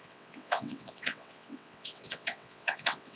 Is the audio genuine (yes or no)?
no